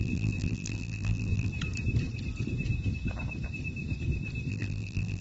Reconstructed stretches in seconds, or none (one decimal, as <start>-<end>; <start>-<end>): 0.0-1.5; 4.5-5.2